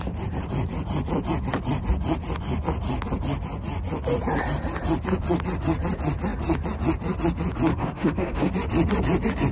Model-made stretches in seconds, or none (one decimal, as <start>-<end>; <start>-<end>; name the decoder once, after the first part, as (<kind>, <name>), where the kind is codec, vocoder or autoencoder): 7.7-8.5 (codec, SNAC)

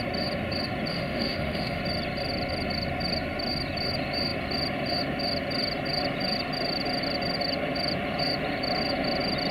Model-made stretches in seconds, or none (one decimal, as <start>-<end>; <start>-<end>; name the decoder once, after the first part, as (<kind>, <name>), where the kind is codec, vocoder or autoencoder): 0.9-1.8 (autoencoder, DAC-VAE)

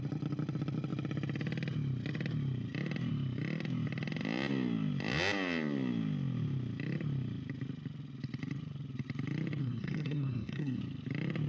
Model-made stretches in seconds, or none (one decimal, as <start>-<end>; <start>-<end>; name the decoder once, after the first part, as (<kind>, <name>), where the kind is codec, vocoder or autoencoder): 9.6-10.8 (codec, SNAC)

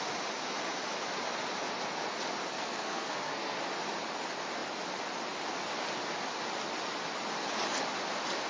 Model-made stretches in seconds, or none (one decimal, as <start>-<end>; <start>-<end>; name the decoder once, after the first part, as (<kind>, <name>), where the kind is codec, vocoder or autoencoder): 2.5-3.6 (codec, SNAC)

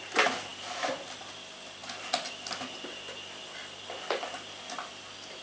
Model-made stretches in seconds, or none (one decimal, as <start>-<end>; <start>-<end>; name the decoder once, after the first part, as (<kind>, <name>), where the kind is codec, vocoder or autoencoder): none